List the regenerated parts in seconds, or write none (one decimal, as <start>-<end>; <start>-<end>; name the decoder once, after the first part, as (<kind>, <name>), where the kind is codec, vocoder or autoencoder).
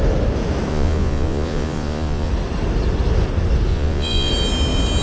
0.7-2.3 (vocoder, Vocos); 3.7-4.3